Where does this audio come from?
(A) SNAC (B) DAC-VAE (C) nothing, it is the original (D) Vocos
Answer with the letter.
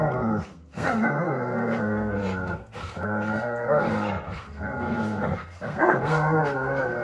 A